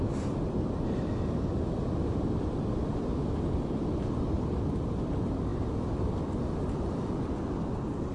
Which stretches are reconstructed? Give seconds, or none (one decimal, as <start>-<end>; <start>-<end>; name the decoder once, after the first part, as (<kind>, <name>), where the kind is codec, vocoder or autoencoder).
none